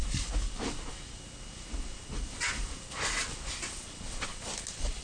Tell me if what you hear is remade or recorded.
recorded